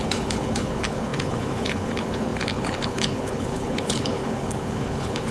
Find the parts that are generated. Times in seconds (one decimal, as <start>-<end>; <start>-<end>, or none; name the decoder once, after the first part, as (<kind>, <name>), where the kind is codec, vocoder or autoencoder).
0.0-5.3 (codec, HILCodec)